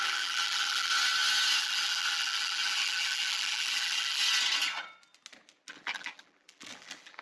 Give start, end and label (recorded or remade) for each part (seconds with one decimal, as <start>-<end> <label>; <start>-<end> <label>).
0.0-0.9 remade; 0.9-1.6 recorded; 1.6-4.2 remade; 4.2-5.7 recorded; 5.7-7.2 remade